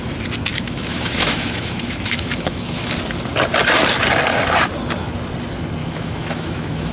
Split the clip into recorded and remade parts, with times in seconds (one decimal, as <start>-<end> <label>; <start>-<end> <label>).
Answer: 0.0-0.5 recorded; 0.5-2.9 remade; 2.9-5.8 recorded; 5.8-6.9 remade